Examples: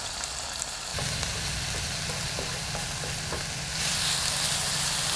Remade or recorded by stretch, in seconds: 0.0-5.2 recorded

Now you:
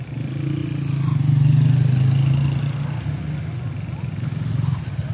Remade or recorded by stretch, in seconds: 0.0-5.1 recorded

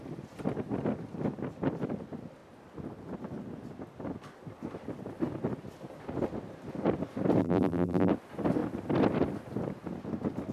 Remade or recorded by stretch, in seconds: 0.0-7.4 recorded; 7.4-8.1 remade; 8.1-10.5 recorded

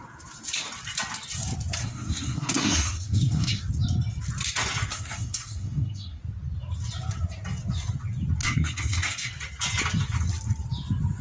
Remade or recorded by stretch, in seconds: 0.0-1.8 recorded; 1.8-3.6 remade; 3.6-4.9 recorded; 4.9-6.2 remade; 6.2-8.4 recorded; 8.4-9.3 remade; 9.3-11.2 recorded

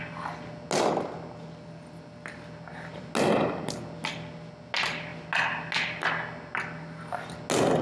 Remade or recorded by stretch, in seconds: 0.0-7.8 recorded

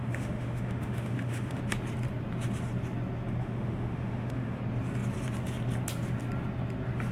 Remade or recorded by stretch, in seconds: 0.0-1.6 remade; 1.6-3.4 recorded; 3.4-4.6 remade; 4.6-7.1 recorded

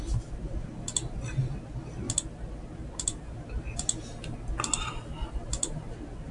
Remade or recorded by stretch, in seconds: 0.0-6.3 recorded

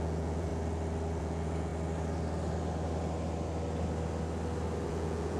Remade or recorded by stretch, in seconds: 0.0-0.5 remade; 0.5-1.2 recorded; 1.2-1.7 remade; 1.7-4.9 recorded; 4.9-5.4 remade